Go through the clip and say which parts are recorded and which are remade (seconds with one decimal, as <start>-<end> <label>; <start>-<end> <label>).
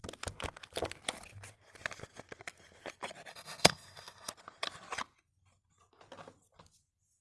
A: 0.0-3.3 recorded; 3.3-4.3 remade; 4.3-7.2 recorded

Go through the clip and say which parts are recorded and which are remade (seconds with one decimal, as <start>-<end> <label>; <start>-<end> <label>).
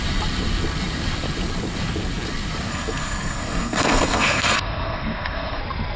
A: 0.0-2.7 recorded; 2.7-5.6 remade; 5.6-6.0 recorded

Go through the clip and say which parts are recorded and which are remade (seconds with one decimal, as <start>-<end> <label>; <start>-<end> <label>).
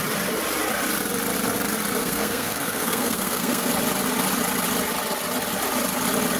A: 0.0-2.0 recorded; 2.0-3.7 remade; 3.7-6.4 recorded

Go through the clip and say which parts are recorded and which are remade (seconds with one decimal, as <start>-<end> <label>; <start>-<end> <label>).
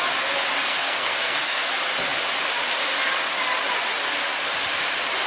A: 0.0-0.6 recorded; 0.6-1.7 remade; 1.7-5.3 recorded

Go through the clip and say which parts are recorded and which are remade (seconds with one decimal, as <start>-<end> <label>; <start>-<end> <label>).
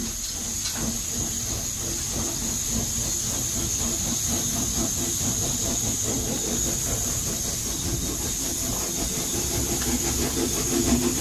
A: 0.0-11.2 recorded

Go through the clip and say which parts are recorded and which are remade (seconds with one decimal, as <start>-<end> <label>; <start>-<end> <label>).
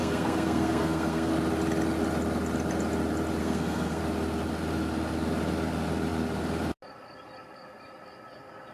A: 0.0-1.3 remade; 1.3-3.4 recorded; 3.4-4.0 remade; 4.0-8.7 recorded